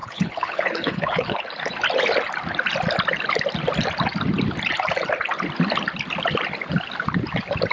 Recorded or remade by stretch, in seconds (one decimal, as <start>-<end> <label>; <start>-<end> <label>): 0.0-1.4 remade; 1.4-7.7 recorded